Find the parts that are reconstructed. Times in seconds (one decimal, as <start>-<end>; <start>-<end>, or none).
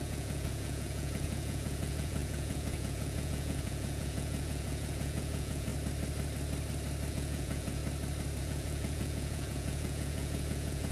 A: 0.0-5.7; 7.1-7.8; 8.4-10.9